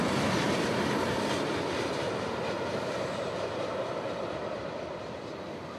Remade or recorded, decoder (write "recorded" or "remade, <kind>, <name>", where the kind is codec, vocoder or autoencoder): remade, vocoder, BigVGAN v2